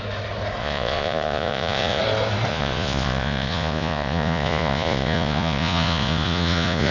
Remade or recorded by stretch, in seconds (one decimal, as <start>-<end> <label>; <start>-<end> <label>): 0.0-0.6 recorded; 0.6-2.0 remade; 2.0-2.5 recorded; 2.5-6.9 remade